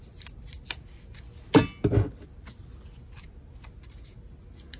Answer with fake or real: real